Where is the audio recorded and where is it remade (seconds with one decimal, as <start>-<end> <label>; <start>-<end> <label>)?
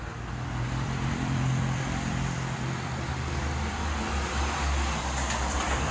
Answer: 0.0-3.1 remade; 3.1-5.5 recorded; 5.5-5.9 remade